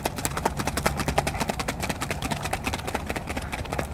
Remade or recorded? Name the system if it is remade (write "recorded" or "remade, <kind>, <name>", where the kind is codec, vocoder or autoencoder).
recorded